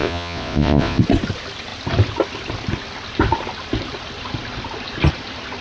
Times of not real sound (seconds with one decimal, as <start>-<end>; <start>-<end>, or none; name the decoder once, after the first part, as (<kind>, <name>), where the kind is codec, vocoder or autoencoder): 0.0-1.0 (vocoder, Vocos)